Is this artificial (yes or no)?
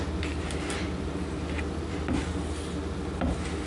no